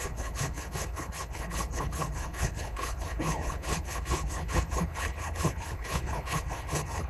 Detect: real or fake fake